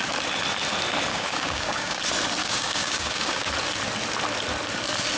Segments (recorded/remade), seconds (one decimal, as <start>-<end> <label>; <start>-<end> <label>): 0.0-1.1 recorded; 1.1-2.0 remade; 2.0-2.4 recorded; 2.4-3.5 remade; 3.5-5.2 recorded